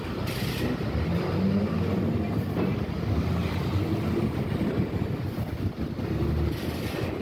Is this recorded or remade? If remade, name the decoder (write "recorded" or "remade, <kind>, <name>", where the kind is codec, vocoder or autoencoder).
recorded